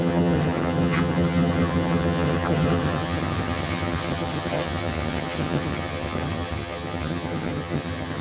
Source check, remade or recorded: remade